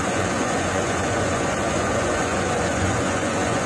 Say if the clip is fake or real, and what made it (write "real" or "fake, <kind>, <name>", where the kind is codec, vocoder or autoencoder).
fake, vocoder, Vocos